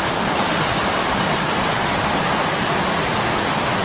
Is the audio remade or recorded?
recorded